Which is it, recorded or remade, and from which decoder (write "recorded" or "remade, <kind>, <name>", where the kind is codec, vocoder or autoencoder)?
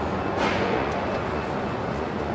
remade, vocoder, Vocos